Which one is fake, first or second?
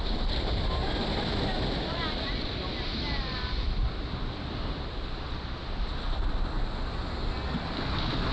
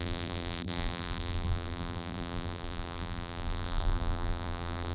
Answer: second